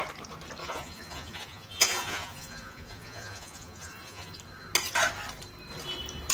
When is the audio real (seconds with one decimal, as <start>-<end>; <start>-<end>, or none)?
0.0-0.6; 4.4-6.3